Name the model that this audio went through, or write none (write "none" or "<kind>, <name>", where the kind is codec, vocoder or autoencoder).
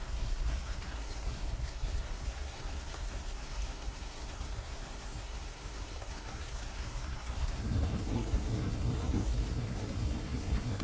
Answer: codec, SNAC